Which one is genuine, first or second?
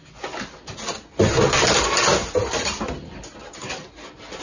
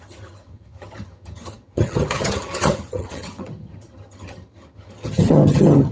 first